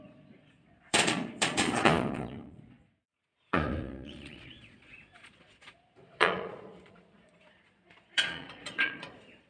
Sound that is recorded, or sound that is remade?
remade